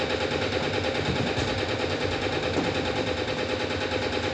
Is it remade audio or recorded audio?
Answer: recorded